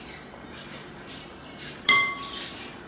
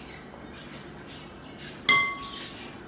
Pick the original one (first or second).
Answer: second